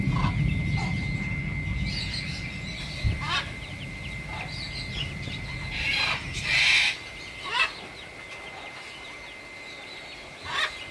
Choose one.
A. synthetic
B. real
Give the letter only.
B